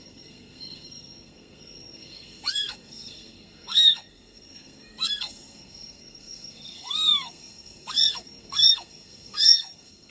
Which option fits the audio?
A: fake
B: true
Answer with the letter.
A